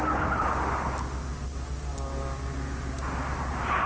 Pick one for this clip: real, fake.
real